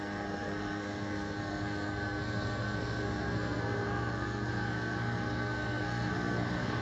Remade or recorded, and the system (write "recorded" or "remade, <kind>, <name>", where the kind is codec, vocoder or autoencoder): remade, codec, SNAC